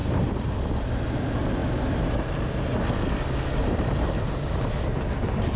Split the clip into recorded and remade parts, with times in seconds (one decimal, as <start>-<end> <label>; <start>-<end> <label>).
0.0-0.6 remade; 0.6-3.6 recorded; 3.6-4.7 remade; 4.7-5.6 recorded